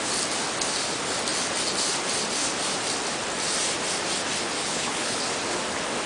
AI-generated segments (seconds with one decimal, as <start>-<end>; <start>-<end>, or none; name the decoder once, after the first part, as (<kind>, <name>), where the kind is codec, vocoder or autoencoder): 4.6-5.2 (codec, HILCodec)